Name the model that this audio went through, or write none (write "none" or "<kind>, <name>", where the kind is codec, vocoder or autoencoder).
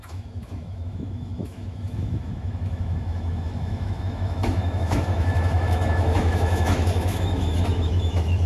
autoencoder, DAC-VAE